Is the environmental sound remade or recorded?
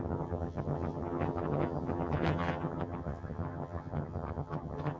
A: remade